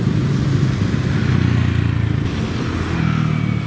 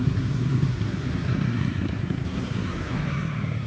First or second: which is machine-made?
second